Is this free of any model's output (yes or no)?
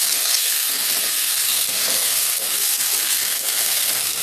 no